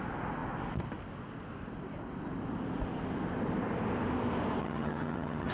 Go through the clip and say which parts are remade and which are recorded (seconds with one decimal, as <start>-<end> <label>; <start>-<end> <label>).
0.0-4.6 recorded; 4.6-5.5 remade